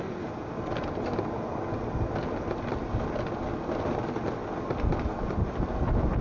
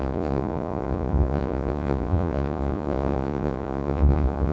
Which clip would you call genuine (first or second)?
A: first